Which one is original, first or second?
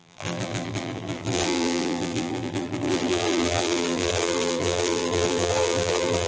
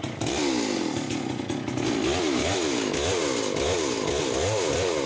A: second